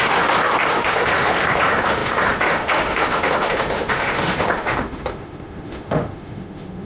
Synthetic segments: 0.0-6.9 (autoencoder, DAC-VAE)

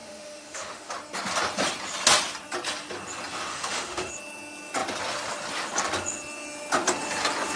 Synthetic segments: 0.0-0.9 (autoencoder, DAC-VAE); 3.5-4.1